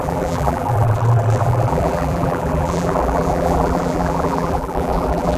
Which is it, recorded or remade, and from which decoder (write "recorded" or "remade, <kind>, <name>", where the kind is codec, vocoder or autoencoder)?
remade, vocoder, BigVGAN v2